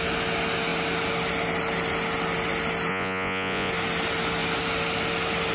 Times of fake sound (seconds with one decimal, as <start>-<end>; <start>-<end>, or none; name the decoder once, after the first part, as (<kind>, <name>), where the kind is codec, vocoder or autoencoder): 2.9-3.7 (vocoder, Vocos)